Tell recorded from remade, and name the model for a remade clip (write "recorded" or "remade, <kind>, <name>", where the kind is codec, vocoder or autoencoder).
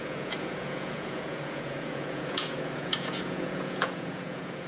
remade, vocoder, Vocos